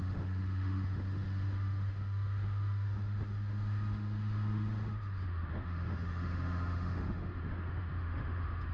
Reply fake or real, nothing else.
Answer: fake